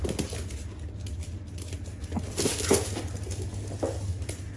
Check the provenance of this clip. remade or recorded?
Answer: recorded